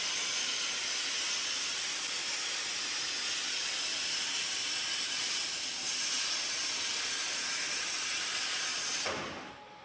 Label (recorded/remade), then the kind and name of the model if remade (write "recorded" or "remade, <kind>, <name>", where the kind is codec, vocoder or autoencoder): recorded